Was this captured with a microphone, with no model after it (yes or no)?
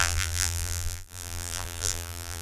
no